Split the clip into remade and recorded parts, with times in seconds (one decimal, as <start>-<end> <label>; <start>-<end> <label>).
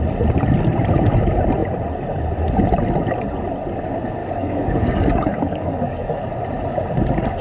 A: 0.0-4.2 recorded; 4.2-6.2 remade; 6.2-7.4 recorded